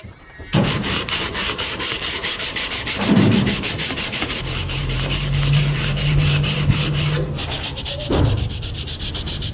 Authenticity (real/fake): fake